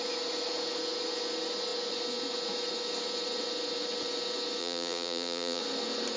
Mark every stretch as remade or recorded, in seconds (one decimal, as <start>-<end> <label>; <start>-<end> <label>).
0.0-4.6 recorded; 4.6-5.6 remade; 5.6-6.2 recorded